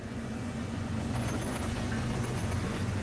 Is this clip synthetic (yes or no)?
yes